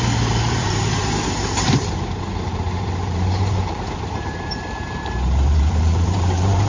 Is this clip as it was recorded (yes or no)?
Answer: no